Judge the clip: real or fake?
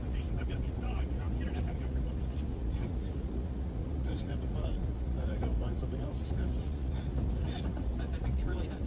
fake